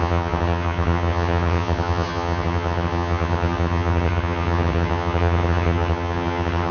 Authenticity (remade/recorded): remade